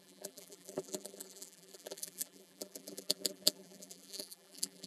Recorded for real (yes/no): no